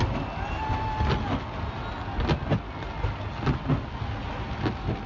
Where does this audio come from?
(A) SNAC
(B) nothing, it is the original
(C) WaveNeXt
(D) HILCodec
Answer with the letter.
B